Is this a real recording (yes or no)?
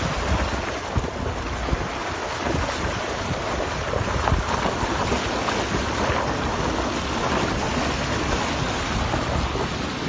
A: yes